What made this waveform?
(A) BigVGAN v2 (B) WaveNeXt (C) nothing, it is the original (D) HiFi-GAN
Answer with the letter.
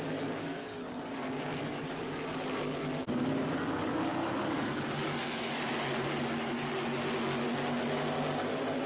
C